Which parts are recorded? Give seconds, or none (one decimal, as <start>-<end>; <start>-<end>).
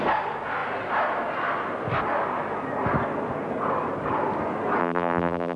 0.0-4.8